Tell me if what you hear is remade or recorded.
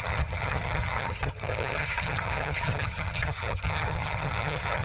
remade